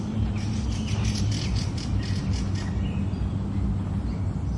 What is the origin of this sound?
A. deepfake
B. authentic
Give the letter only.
B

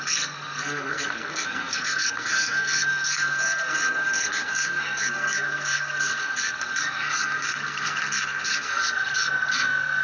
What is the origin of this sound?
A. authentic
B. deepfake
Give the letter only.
B